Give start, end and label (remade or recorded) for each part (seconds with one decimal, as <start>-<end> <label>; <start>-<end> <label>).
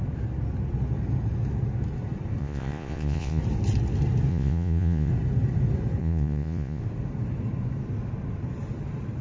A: 0.0-2.4 recorded; 2.4-3.4 remade; 3.4-4.3 recorded; 4.3-5.1 remade; 5.1-6.0 recorded; 6.0-6.8 remade; 6.8-9.2 recorded